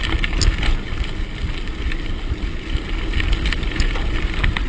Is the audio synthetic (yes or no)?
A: no